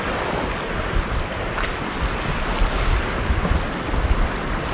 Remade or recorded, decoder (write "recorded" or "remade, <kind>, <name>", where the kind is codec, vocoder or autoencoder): recorded